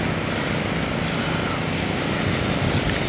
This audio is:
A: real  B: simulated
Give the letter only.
A